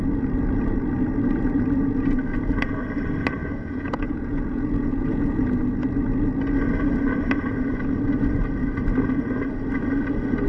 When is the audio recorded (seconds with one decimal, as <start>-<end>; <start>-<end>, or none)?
0.0-3.4; 5.4-10.5